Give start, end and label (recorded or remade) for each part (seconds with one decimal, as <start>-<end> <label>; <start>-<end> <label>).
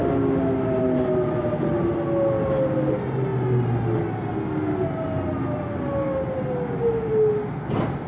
0.0-8.1 recorded